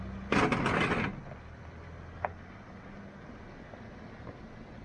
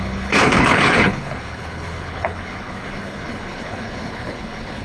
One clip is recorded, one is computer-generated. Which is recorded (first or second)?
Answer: first